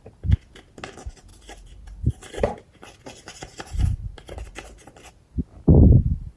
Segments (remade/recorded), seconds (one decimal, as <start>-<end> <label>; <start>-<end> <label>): 0.0-1.3 recorded; 1.3-5.1 remade; 5.1-6.4 recorded